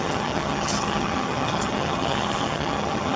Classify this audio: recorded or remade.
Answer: remade